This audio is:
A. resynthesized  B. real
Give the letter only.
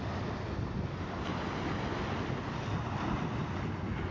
B